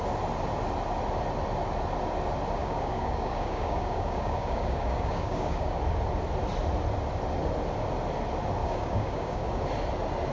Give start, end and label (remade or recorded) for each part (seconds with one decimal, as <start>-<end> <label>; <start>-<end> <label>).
0.0-2.6 recorded; 2.6-5.8 remade; 5.8-8.6 recorded; 8.6-9.6 remade; 9.6-10.3 recorded